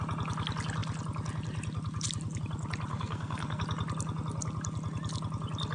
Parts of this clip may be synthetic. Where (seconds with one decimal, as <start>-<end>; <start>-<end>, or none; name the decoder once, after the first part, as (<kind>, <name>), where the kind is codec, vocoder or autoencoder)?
2.9-3.6 (codec, SNAC)

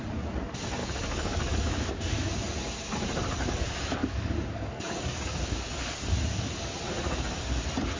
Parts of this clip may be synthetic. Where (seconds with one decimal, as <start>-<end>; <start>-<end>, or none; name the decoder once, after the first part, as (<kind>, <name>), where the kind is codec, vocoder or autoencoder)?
0.8-2.1 (codec, DAC); 4.0-5.4

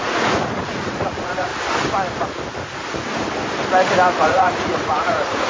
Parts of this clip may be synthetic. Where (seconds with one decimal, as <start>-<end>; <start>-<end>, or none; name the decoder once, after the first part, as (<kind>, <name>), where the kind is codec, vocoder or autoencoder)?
0.0-1.5 (vocoder, Vocos); 4.2-5.5

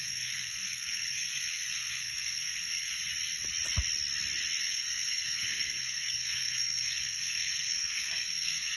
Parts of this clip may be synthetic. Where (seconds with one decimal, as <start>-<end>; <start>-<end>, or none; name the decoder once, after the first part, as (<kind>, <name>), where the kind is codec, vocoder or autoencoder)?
0.0-3.0 (codec, SNAC); 4.6-8.8

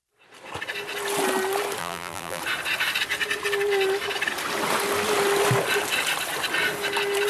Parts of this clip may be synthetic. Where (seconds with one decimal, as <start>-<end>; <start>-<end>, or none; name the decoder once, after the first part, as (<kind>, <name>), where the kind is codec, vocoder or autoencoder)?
1.8-2.4 (vocoder, BigVGAN v2)

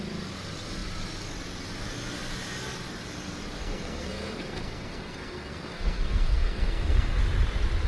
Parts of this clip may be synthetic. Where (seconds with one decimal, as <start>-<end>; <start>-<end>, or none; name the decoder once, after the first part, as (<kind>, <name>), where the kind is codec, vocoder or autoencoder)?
3.6-7.2 (codec, SNAC)

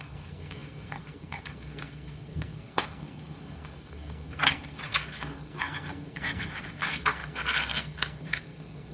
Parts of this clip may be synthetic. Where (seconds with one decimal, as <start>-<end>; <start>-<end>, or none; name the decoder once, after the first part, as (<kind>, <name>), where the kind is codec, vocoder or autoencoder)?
0.0-8.9 (codec, SNAC)